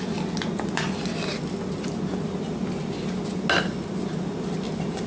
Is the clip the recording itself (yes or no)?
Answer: yes